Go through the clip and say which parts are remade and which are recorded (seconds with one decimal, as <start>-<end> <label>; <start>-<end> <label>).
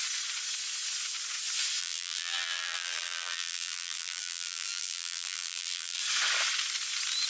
0.0-1.8 recorded; 1.8-6.0 remade; 6.0-7.3 recorded